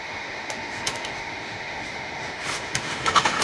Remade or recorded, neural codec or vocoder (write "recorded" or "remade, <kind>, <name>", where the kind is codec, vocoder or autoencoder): remade, autoencoder, DAC-VAE